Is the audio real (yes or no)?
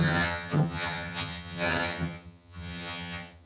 no